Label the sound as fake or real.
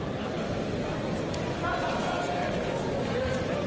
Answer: real